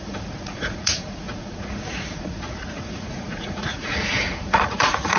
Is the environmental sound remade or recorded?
remade